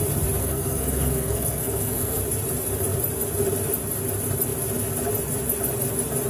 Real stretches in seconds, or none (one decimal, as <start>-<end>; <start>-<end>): 0.0-0.4; 2.2-6.3